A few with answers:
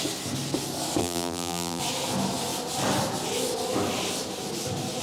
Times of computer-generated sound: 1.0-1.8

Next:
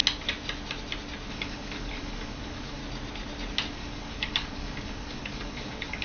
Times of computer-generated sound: 1.3-2.8; 3.7-6.0

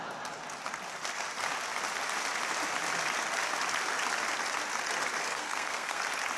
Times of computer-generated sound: 5.2-6.0

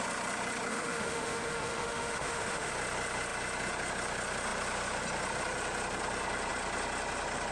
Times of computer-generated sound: 0.7-2.7

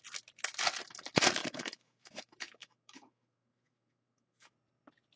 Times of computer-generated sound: 1.4-4.5

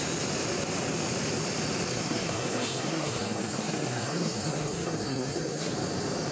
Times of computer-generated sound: 1.9-5.7